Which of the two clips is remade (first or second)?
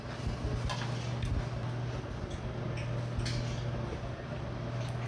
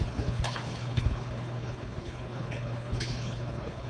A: second